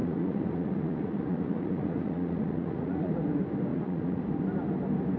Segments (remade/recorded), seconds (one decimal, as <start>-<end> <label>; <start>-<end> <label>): 0.0-3.1 remade; 3.1-3.7 recorded; 3.7-4.2 remade; 4.2-5.2 recorded